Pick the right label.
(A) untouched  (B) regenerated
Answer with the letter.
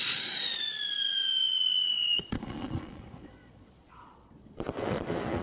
B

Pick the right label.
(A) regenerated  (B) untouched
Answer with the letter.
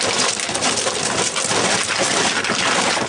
B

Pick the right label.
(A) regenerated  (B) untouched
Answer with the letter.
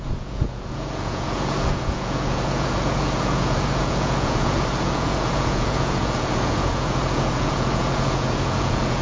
A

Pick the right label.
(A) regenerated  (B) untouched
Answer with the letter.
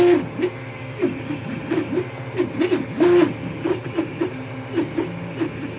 B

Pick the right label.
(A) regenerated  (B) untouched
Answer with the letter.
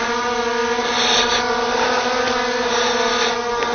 B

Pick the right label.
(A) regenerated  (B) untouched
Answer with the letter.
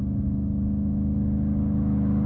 B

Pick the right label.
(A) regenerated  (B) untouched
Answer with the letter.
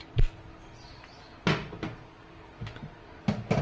B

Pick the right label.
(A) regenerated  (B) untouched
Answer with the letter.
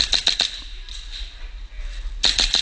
B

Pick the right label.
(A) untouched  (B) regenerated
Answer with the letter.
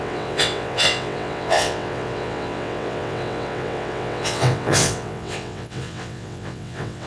B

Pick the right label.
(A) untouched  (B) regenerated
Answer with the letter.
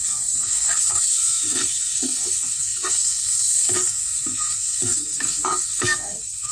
B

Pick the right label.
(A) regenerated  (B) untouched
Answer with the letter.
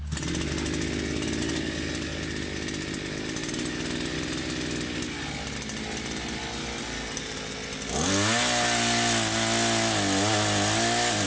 B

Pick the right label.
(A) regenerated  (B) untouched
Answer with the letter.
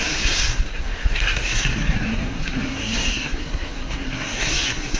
A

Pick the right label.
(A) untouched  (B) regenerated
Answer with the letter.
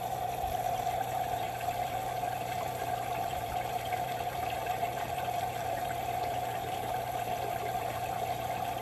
B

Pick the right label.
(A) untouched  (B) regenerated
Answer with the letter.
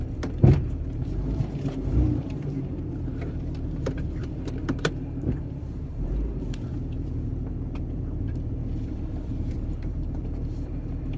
B